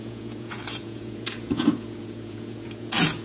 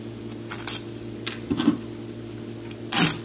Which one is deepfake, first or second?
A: first